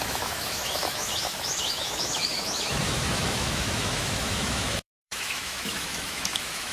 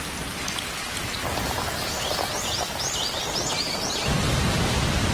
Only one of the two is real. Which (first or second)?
second